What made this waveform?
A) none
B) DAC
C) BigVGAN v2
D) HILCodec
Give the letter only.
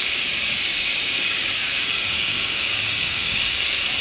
B